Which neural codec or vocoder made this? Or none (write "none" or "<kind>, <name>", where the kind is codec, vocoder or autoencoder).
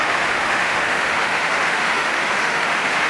autoencoder, DAC-VAE